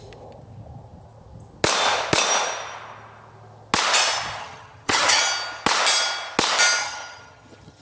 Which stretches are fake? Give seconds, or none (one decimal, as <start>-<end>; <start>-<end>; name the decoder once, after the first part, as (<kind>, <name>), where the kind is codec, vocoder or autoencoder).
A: 4.4-5.2 (vocoder, HiFi-GAN); 6.8-7.8